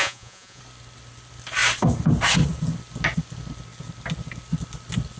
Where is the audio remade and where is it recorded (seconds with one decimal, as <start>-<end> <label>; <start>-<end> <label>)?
0.0-0.6 remade; 0.6-5.2 recorded